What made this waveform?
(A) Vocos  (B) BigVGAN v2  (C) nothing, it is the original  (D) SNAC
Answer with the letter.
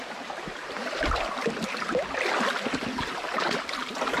C